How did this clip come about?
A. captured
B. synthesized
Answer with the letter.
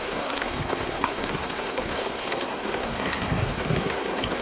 B